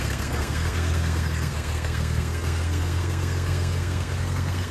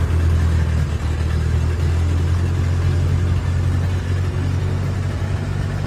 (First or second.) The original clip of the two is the second